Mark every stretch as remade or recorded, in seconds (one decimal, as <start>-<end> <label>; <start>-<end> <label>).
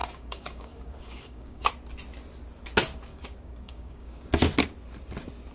0.0-1.7 remade; 1.7-3.1 recorded; 3.1-4.3 remade; 4.3-5.5 recorded